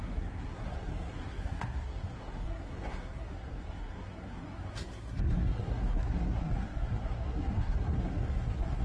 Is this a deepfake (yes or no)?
yes